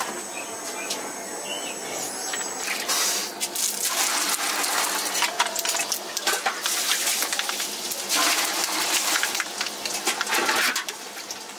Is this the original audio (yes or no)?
yes